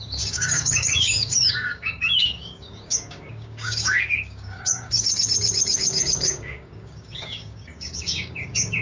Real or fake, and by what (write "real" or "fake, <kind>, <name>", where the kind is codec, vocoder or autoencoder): fake, codec, DAC